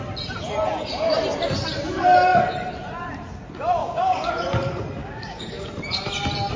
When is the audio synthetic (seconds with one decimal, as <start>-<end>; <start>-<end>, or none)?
3.8-4.3; 5.0-5.7